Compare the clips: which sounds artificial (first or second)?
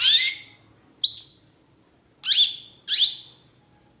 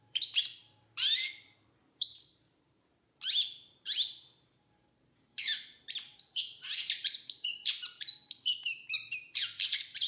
second